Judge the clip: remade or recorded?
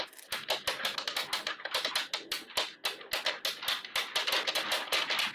recorded